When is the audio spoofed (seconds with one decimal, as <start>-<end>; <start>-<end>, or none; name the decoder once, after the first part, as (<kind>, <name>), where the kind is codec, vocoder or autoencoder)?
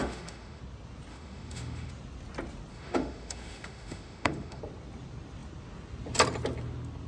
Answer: 0.0-0.6 (autoencoder, DAC-VAE); 1.1-1.9; 2.7-4.6